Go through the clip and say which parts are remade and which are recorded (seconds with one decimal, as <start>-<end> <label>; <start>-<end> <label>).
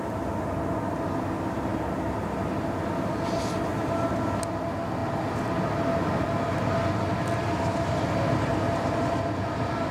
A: 0.0-9.9 recorded